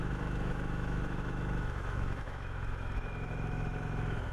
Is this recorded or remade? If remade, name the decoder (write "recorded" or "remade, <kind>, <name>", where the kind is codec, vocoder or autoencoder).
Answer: remade, autoencoder, DAC-VAE